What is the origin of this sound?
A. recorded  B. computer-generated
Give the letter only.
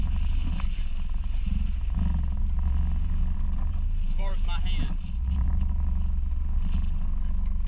A